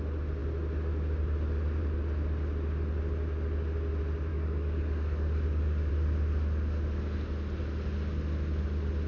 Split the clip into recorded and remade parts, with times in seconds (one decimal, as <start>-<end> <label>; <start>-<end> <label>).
0.0-4.3 recorded; 4.3-5.9 remade; 5.9-9.1 recorded